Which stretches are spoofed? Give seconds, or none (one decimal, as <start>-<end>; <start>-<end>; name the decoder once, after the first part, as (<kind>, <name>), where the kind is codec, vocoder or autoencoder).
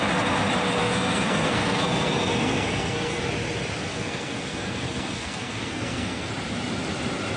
0.8-3.2 (codec, SNAC); 3.9-6.3